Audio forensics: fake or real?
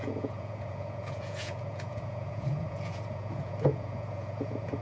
fake